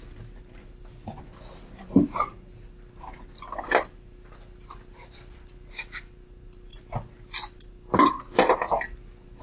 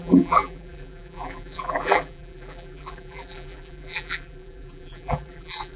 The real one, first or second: first